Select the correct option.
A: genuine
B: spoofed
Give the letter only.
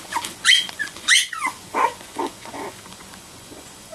B